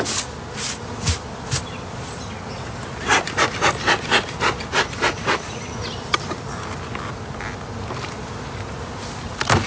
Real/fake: real